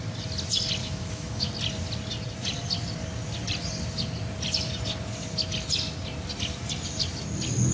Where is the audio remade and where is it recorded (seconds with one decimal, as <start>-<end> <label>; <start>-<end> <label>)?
0.0-0.8 recorded; 0.8-1.5 remade; 1.5-7.7 recorded